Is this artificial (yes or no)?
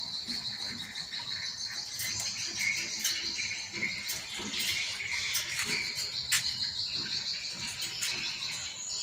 no